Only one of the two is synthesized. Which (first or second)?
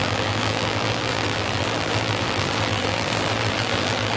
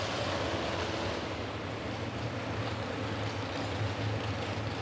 first